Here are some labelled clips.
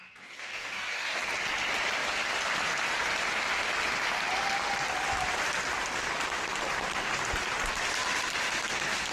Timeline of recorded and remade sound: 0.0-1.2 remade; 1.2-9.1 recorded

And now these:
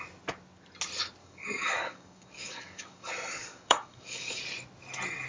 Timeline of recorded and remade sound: 0.0-1.2 recorded; 1.2-4.4 remade; 4.4-5.3 recorded

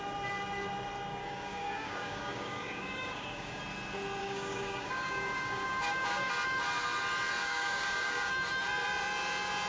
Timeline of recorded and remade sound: 0.0-1.2 recorded; 1.2-3.6 remade; 3.6-4.2 recorded; 4.2-6.3 remade; 6.3-7.4 recorded; 7.4-8.3 remade; 8.3-9.7 recorded

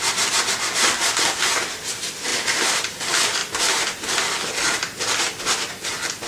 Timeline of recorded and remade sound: 0.0-6.3 recorded

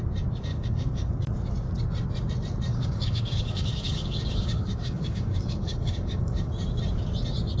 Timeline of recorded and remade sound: 0.0-0.5 recorded; 0.5-1.1 remade; 1.1-2.7 recorded; 2.7-6.5 remade; 6.5-7.6 recorded

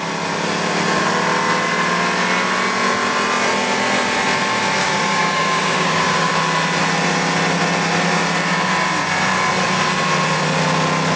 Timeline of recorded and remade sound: 0.0-4.8 recorded; 4.8-6.3 remade; 6.3-11.2 recorded

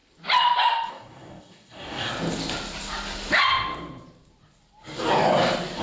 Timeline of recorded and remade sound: 0.0-0.9 recorded; 0.9-2.1 remade; 2.1-5.8 recorded

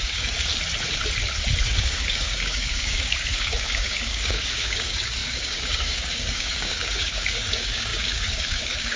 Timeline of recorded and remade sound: 0.0-0.5 remade; 0.5-1.6 recorded; 1.6-9.0 remade